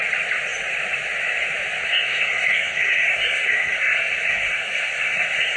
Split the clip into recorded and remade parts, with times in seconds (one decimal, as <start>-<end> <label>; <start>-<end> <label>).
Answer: 0.0-1.8 recorded; 1.8-5.6 remade